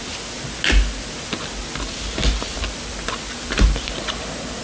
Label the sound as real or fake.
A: real